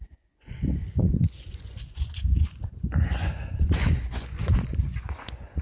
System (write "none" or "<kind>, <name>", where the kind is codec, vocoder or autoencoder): vocoder, Vocos